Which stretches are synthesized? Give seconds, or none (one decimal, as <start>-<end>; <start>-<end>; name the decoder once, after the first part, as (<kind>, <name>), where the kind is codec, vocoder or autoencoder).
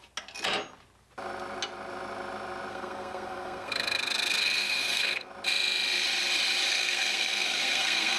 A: 2.7-5.3 (codec, SNAC); 6.7-8.2